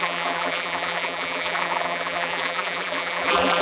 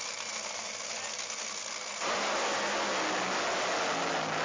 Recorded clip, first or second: second